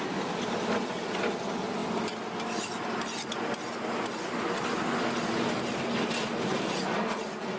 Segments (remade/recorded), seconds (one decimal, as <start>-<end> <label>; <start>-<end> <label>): 0.0-7.6 recorded